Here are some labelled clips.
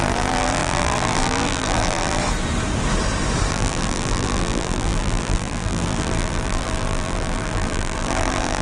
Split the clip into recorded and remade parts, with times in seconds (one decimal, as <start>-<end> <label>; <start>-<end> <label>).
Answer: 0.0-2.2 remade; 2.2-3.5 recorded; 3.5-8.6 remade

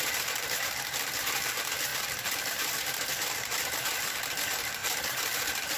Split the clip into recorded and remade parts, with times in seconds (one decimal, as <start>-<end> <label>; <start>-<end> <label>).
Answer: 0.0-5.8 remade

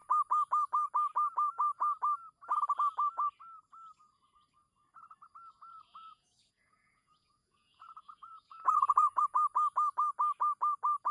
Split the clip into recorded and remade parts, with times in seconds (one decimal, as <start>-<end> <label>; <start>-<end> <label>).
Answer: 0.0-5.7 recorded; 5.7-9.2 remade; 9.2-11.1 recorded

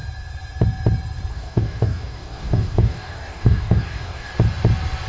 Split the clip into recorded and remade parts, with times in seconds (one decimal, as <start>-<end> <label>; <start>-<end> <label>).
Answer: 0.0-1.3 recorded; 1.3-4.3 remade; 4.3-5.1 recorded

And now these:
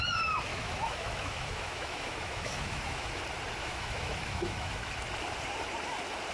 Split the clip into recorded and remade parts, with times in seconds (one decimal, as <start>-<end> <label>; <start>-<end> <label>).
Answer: 0.0-0.5 recorded; 0.5-3.2 remade; 3.2-3.6 recorded; 3.6-4.9 remade; 4.9-6.3 recorded

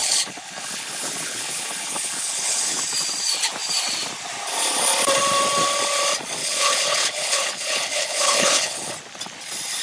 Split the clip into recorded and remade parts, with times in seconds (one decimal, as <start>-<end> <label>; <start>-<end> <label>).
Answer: 0.0-2.8 remade; 2.8-6.4 recorded; 6.4-8.9 remade; 8.9-9.8 recorded

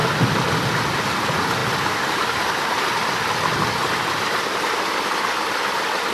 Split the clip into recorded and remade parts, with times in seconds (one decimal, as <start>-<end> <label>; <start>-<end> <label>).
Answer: 0.0-6.1 recorded

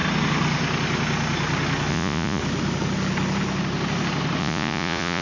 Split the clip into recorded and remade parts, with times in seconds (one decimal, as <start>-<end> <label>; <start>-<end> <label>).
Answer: 0.0-1.9 recorded; 1.9-2.4 remade; 2.4-4.4 recorded; 4.4-5.2 remade